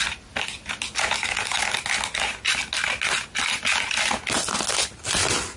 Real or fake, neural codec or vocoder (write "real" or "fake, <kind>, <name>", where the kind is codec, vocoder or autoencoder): real